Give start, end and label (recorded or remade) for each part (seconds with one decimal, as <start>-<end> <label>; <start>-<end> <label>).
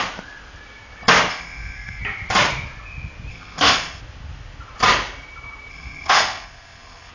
0.0-1.3 recorded; 1.3-2.0 remade; 2.0-3.3 recorded; 3.3-4.0 remade; 4.0-5.7 recorded; 5.7-7.1 remade